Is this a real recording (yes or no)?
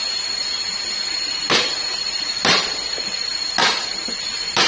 yes